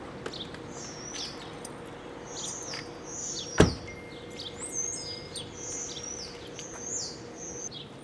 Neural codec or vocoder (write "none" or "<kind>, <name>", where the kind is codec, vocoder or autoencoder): none